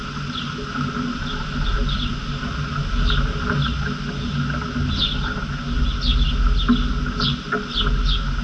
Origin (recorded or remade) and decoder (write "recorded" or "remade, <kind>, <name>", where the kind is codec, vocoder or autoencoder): recorded